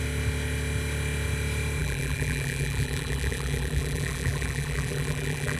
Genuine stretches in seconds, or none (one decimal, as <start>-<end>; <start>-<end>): 0.0-1.8